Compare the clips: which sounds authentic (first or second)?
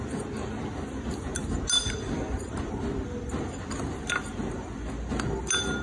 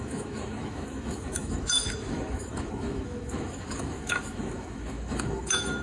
first